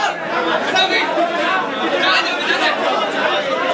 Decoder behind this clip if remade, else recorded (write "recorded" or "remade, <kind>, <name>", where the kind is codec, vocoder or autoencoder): recorded